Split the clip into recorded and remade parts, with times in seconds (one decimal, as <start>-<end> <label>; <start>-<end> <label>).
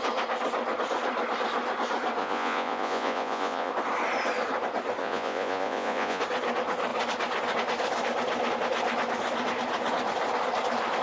0.0-2.2 recorded; 2.2-3.7 remade; 3.7-5.0 recorded; 5.0-6.2 remade; 6.2-11.0 recorded